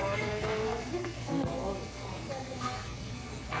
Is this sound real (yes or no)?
no